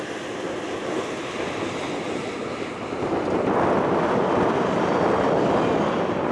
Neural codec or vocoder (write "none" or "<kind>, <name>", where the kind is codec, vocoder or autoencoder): none